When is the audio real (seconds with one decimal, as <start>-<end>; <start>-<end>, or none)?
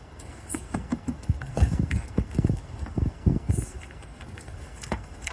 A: none